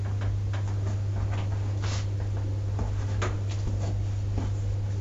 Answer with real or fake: real